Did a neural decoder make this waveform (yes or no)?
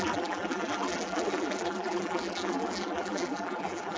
yes